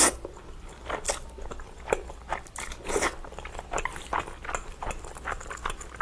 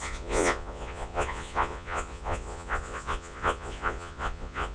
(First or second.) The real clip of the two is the first